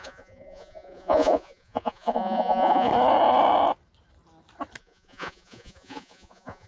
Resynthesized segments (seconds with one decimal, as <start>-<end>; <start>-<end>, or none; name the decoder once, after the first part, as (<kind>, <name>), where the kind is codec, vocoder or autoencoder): 0.0-2.9 (vocoder, Vocos); 4.8-6.7